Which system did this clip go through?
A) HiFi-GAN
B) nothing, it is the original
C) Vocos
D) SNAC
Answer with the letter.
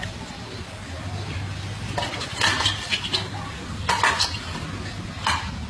B